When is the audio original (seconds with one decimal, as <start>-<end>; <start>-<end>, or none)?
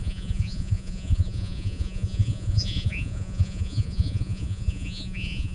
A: none